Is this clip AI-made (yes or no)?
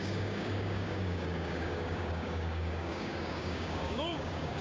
yes